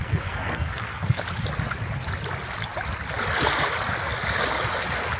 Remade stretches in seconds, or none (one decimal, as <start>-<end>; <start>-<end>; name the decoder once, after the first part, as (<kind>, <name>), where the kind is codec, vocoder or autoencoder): 0.0-1.2 (codec, SNAC)